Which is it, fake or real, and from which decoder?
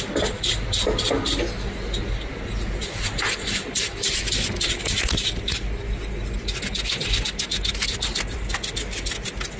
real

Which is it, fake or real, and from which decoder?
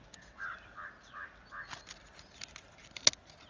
real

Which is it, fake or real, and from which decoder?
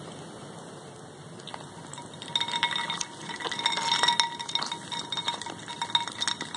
real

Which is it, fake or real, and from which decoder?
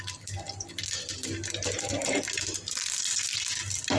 real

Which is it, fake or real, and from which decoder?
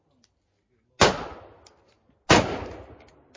real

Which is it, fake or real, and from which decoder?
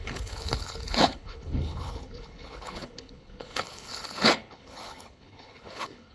fake, codec, HILCodec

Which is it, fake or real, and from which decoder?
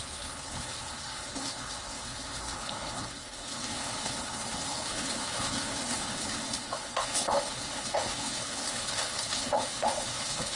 fake, codec, HILCodec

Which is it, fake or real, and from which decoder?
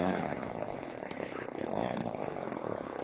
fake, codec, HILCodec